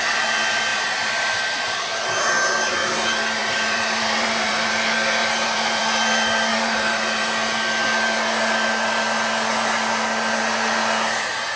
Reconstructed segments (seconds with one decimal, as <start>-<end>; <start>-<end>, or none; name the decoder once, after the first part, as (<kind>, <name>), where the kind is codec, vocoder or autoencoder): 0.7-1.8 (vocoder, BigVGAN v2); 3.4-4.7; 5.2-5.8; 6.5-7.2